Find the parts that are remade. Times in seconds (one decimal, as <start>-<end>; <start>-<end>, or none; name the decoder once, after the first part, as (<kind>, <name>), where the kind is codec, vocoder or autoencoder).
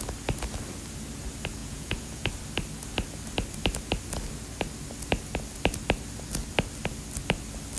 1.6-2.3 (vocoder, Vocos)